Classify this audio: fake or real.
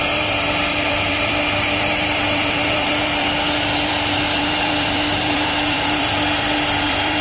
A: fake